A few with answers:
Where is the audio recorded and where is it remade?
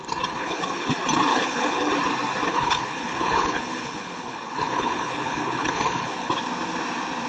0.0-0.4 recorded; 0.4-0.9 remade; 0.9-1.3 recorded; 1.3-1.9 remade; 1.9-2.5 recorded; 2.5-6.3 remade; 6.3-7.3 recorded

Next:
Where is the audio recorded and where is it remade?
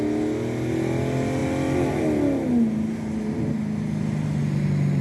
0.0-5.0 recorded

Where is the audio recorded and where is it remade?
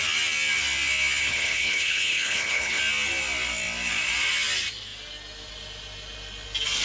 0.0-1.3 recorded; 1.3-2.8 remade; 2.8-6.8 recorded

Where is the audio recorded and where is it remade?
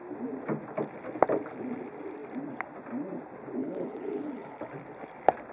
0.0-3.6 recorded; 3.6-4.7 remade; 4.7-5.5 recorded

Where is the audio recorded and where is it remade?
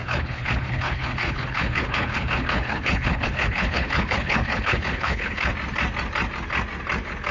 0.0-5.5 remade; 5.5-7.3 recorded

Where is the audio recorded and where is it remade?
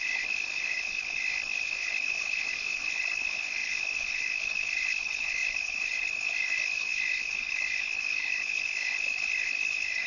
0.0-10.1 remade